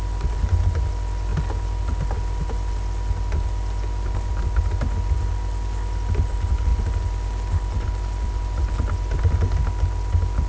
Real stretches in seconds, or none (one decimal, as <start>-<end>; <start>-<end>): 0.0-10.5